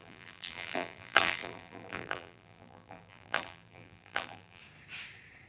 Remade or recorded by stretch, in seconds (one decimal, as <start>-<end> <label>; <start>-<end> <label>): 0.0-4.6 remade; 4.6-5.5 recorded